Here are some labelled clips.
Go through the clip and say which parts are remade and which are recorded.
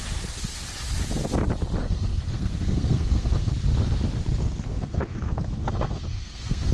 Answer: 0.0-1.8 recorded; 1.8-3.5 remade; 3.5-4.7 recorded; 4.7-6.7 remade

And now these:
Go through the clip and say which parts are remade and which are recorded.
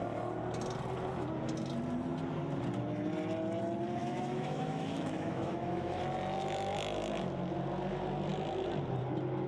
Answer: 0.0-4.0 recorded; 4.0-6.0 remade; 6.0-9.5 recorded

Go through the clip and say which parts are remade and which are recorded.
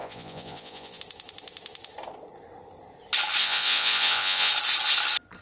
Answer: 0.0-1.0 remade; 1.0-3.4 recorded; 3.4-4.5 remade; 4.5-5.4 recorded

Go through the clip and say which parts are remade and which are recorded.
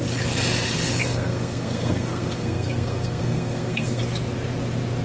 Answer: 0.0-1.0 recorded; 1.0-4.0 remade; 4.0-5.0 recorded